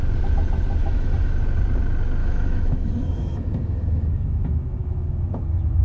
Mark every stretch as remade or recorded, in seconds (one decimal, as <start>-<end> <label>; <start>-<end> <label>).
0.0-0.8 recorded; 0.8-1.3 remade; 1.3-2.2 recorded; 2.2-5.8 remade